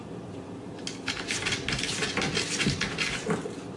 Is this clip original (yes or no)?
yes